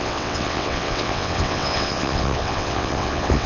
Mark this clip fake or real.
fake